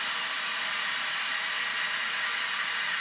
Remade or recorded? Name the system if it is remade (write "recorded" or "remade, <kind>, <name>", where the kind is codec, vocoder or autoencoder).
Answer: recorded